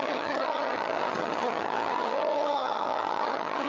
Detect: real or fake fake